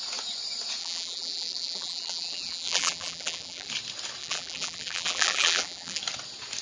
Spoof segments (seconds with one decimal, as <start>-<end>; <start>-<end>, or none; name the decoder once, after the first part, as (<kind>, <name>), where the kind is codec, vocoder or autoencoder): 0.8-3.7 (vocoder, BigVGAN v2); 4.2-6.0